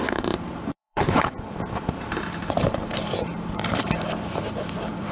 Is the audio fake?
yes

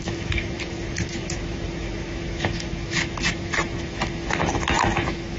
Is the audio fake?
yes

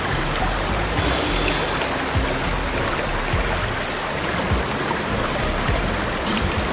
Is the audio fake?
no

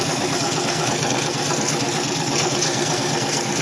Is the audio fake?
yes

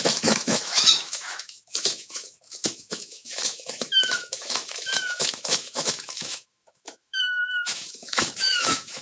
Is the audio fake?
yes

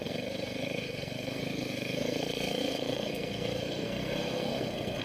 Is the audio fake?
yes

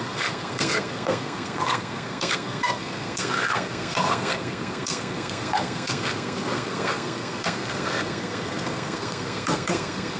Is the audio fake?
yes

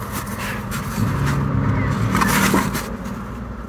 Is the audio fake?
no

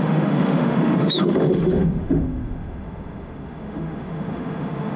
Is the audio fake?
yes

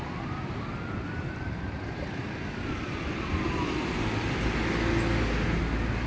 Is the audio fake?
no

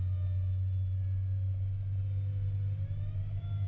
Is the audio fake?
no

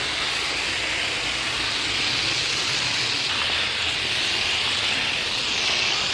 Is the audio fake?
no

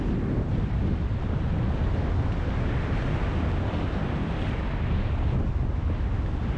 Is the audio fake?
no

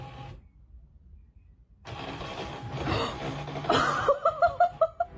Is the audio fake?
no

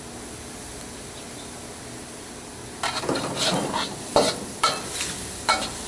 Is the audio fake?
no